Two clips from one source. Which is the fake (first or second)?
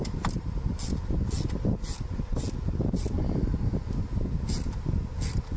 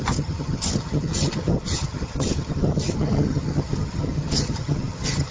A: second